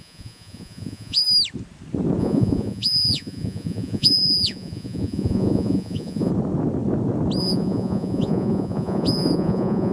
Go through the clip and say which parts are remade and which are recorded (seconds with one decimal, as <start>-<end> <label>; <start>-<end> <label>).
0.0-1.2 remade; 1.2-2.2 recorded; 2.2-6.3 remade; 6.3-7.4 recorded; 7.4-9.9 remade